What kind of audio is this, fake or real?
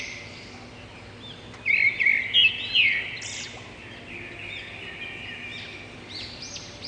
real